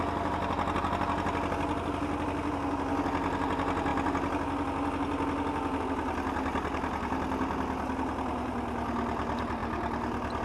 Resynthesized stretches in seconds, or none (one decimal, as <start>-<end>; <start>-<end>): none